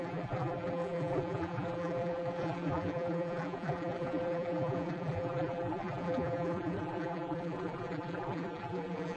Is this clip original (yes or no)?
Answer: no